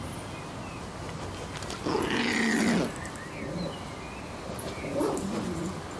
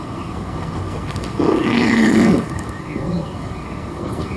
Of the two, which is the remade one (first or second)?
second